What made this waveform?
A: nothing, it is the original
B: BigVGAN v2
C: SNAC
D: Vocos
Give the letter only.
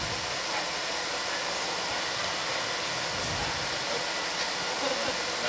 A